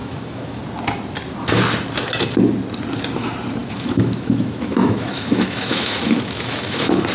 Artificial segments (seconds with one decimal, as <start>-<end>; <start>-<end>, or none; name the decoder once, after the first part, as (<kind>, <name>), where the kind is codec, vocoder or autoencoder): 0.0-0.6 (autoencoder, DAC-VAE); 3.6-7.1